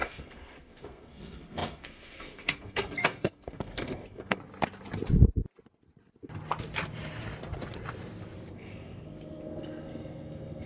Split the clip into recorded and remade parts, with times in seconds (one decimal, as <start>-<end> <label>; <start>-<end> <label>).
0.0-4.4 remade; 4.4-8.5 recorded; 8.5-10.7 remade